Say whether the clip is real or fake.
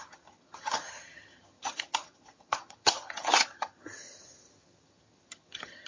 fake